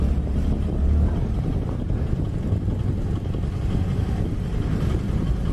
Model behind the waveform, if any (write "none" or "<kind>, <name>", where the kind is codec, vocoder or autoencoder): none